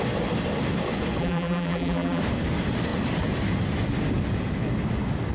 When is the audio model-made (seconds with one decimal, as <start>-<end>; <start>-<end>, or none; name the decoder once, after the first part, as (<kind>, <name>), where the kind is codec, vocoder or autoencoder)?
1.2-2.2 (vocoder, BigVGAN v2)